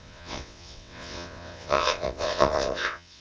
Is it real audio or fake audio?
fake